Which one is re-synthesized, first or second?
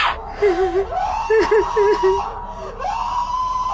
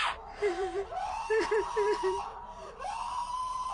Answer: second